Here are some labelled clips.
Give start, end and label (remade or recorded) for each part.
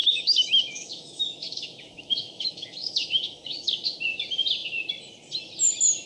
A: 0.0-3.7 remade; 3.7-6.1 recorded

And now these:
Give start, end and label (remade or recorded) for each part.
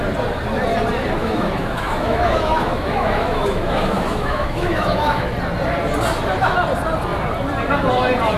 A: 0.0-1.2 recorded; 1.2-5.3 remade; 5.3-8.4 recorded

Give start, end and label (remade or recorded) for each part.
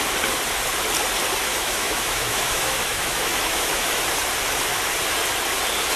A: 0.0-1.5 recorded; 1.5-4.0 remade; 4.0-6.0 recorded